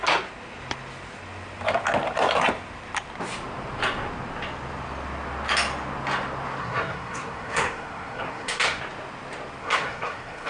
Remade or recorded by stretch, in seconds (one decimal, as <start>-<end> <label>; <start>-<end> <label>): 0.0-6.6 recorded; 6.6-8.8 remade; 8.8-9.6 recorded; 9.6-10.5 remade